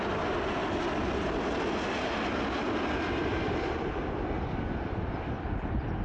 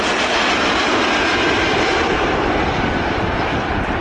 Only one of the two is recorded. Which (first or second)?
first